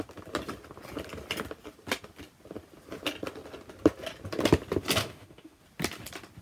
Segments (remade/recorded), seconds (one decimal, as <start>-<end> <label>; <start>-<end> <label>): 0.0-5.0 recorded; 5.0-5.6 remade; 5.6-6.4 recorded